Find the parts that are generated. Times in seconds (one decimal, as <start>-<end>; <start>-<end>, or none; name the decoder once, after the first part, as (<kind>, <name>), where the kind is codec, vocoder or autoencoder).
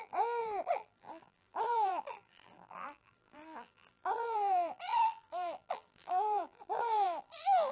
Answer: 0.0-7.7 (vocoder, BigVGAN v2)